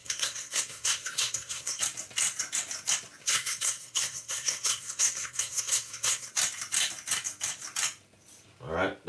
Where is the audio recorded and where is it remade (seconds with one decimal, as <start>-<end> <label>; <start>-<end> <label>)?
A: 0.0-1.8 remade; 1.8-3.2 recorded; 3.2-6.3 remade; 6.3-9.1 recorded